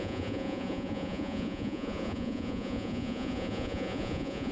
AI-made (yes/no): yes